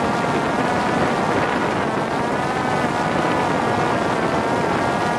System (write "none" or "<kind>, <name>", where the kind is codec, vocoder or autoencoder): none